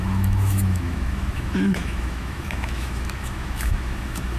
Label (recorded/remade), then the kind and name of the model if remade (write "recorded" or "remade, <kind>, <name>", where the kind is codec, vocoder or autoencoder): remade, autoencoder, DAC-VAE